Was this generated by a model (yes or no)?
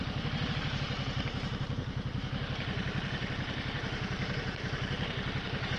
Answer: no